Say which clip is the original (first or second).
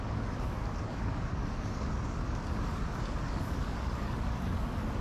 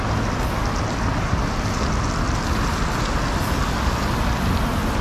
second